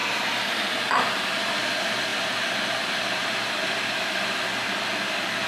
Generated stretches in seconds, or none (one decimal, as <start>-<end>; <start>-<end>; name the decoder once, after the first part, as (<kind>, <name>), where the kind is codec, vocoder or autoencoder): none